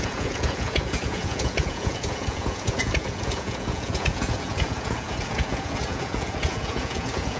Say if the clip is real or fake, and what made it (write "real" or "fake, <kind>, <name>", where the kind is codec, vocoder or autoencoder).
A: fake, vocoder, Vocos